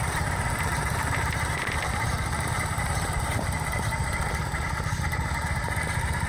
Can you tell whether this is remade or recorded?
recorded